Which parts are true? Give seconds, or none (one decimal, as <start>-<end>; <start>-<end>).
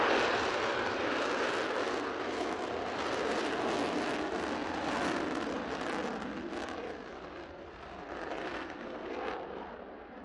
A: 0.0-8.4; 9.1-10.2